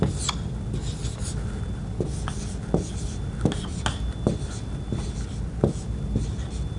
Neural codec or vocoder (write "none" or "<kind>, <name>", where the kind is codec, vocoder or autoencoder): none